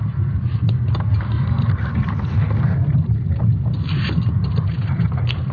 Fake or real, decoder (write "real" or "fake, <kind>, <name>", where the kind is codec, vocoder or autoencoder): real